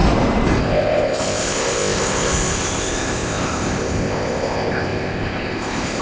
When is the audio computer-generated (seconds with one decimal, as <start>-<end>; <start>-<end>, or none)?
0.6-6.0